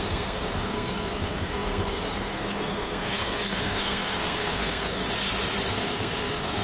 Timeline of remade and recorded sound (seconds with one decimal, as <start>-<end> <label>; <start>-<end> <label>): 0.0-5.0 remade; 5.0-5.7 recorded; 5.7-6.6 remade